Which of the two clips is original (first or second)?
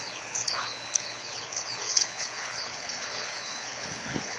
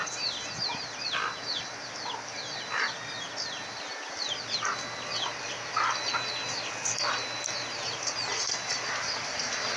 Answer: second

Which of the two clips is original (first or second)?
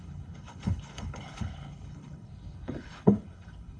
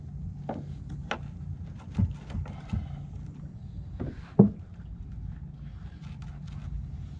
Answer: second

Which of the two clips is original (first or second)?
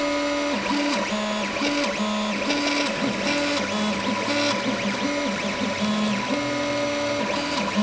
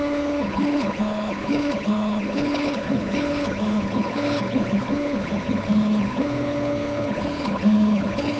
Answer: first